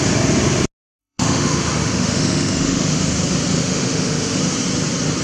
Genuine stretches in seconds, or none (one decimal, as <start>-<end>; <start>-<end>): 0.0-1.0; 3.0-3.6; 4.4-5.2